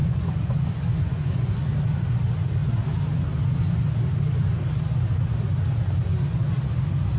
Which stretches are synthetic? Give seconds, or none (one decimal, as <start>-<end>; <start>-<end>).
0.0-1.5

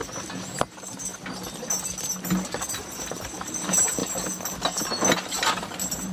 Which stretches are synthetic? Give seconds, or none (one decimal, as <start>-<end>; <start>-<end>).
0.7-1.1; 2.7-4.0; 5.5-6.1